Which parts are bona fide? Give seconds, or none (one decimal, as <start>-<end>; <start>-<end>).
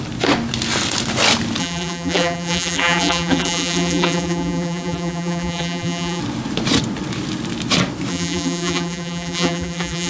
0.0-1.6; 6.2-8.1